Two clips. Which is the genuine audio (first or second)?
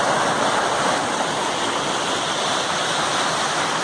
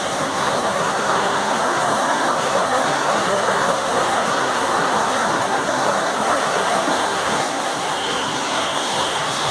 first